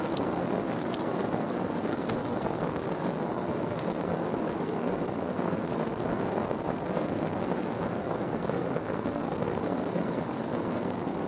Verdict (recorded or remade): remade